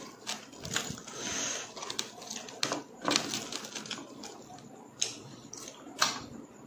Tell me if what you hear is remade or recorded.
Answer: recorded